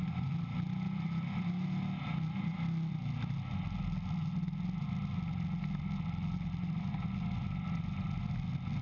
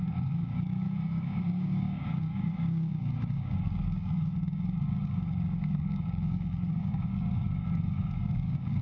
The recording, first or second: first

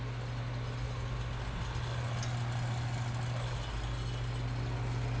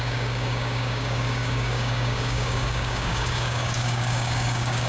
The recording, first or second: first